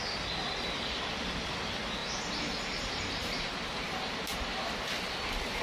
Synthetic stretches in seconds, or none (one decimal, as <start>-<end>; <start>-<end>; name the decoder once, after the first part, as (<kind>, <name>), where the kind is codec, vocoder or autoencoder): 2.0-4.7 (vocoder, BigVGAN v2)